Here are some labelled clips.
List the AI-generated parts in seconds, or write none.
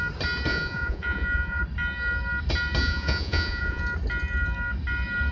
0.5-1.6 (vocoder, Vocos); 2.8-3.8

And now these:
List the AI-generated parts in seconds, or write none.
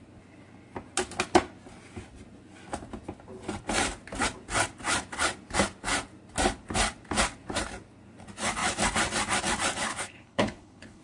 9.9-11.0 (codec, HILCodec)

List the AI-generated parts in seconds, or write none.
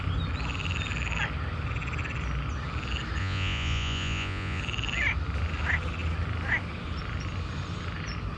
3.2-4.6 (vocoder, Vocos)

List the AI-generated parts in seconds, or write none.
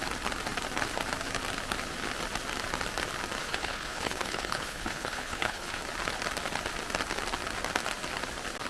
3.4-5.8 (codec, HILCodec)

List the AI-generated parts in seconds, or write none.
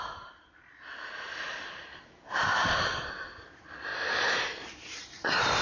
2.5-3.1 (vocoder, BigVGAN v2); 3.9-5.6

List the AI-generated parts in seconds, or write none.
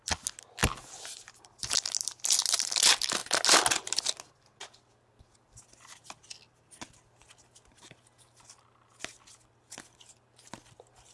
0.6-1.6 (vocoder, BigVGAN v2)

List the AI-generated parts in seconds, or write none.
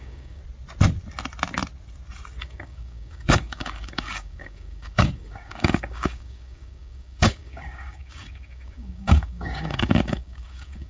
0.0-0.4 (codec, DAC); 2.4-10.9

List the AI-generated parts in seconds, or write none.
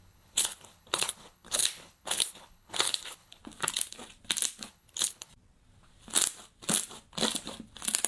0.0-3.4 (codec, HILCodec); 4.7-5.3